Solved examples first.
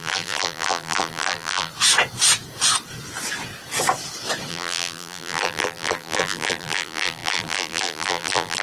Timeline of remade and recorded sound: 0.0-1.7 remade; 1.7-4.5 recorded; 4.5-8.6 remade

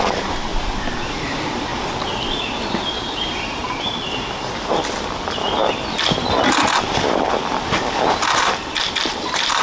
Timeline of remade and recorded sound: 0.0-0.5 remade; 0.5-1.0 recorded; 1.0-1.7 remade; 1.7-3.2 recorded; 3.2-3.6 remade; 3.6-8.4 recorded; 8.4-9.6 remade

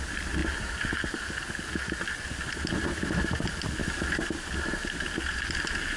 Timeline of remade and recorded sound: 0.0-3.8 recorded; 3.8-4.3 remade; 4.3-6.0 recorded